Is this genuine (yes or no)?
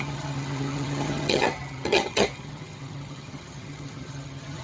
no